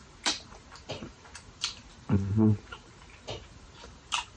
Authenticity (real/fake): fake